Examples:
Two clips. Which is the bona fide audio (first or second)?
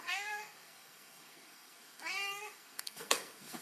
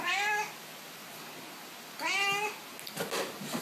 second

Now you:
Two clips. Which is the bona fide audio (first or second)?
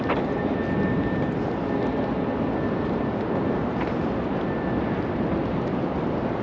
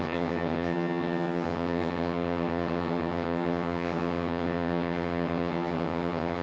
first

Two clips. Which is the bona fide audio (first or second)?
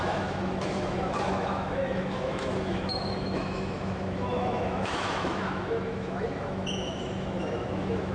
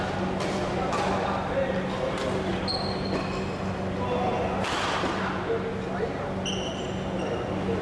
second